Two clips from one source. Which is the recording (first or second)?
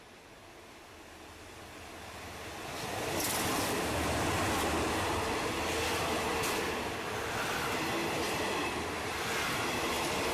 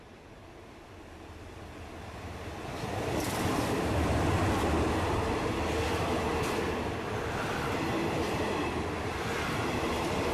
first